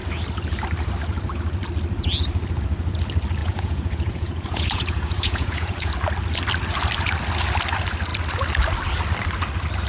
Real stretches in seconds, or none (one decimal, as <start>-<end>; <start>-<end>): 0.0-3.4; 5.9-9.9